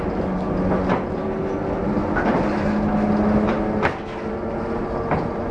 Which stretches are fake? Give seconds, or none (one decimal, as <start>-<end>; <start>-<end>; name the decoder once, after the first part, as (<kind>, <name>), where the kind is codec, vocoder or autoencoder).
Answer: none